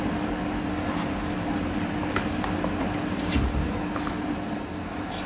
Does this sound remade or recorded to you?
recorded